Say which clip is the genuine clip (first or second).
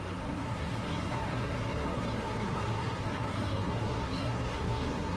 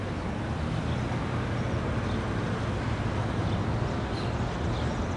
second